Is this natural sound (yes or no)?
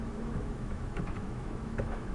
no